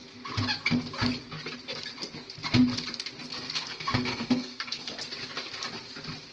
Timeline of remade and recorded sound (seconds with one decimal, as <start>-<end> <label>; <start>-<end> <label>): 0.0-3.3 recorded; 3.3-5.0 remade; 5.0-6.3 recorded